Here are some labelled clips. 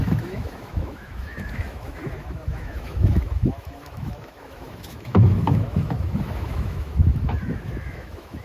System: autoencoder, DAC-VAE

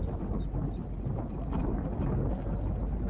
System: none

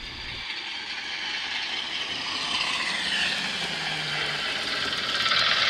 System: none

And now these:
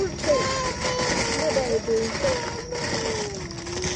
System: none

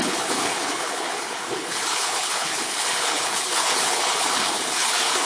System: codec, HILCodec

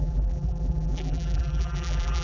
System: vocoder, BigVGAN v2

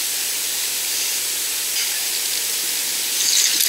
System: none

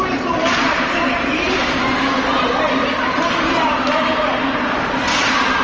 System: vocoder, BigVGAN v2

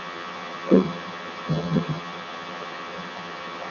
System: vocoder, HiFi-GAN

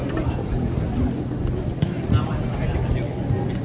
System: none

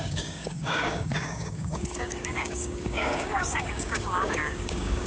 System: codec, DAC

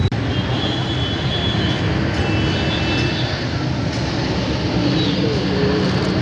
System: none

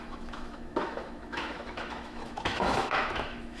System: autoencoder, DAC-VAE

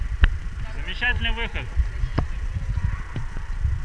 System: none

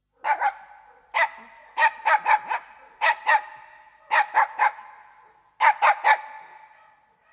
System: none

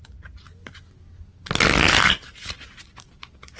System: none